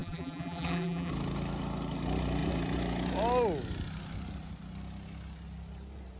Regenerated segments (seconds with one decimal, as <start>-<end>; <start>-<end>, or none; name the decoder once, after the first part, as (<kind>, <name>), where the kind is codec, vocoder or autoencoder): 0.0-1.1 (vocoder, BigVGAN v2)